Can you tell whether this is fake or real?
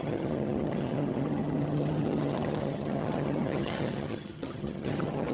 fake